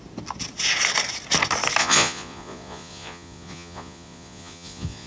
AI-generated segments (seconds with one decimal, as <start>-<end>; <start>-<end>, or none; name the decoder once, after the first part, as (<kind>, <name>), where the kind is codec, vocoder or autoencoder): 1.8-5.1 (vocoder, Vocos)